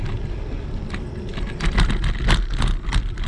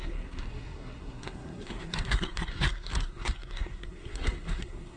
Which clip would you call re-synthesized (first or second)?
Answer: second